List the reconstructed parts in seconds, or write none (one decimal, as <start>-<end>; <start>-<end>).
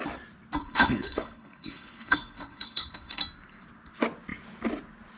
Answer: 0.6-3.2